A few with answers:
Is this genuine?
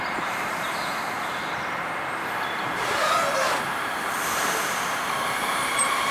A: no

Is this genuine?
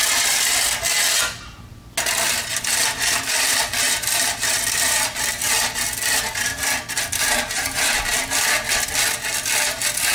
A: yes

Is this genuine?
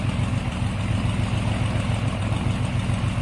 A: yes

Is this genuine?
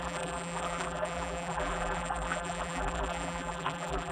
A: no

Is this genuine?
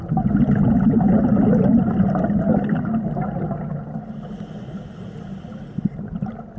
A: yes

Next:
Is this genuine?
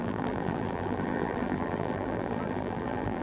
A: no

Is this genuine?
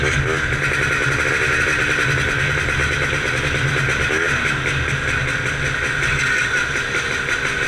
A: yes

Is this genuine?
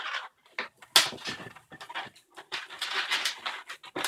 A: yes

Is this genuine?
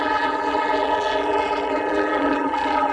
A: no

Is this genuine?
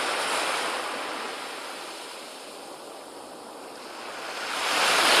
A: yes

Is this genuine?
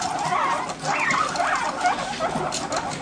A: no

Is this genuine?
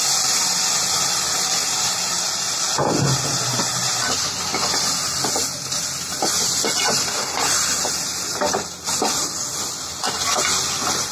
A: yes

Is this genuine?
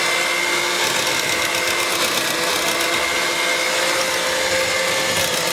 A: yes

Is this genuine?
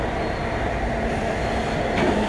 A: no